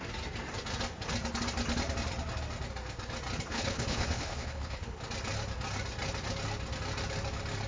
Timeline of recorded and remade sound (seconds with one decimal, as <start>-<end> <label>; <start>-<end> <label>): 0.0-3.5 recorded; 3.5-5.0 remade; 5.0-7.7 recorded